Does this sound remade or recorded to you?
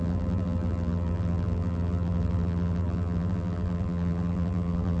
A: remade